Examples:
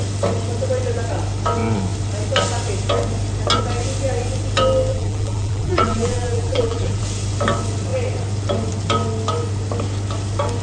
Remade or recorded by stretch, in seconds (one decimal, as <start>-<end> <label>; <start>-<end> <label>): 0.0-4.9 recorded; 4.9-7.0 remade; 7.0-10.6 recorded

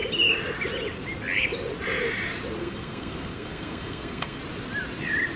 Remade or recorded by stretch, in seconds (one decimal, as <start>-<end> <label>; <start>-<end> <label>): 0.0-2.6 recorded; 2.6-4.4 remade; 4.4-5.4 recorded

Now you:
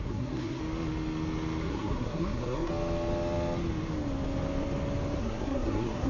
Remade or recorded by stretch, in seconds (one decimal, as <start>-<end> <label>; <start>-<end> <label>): 0.0-0.6 remade; 0.6-1.6 recorded; 1.6-2.7 remade; 2.7-5.2 recorded; 5.2-6.1 remade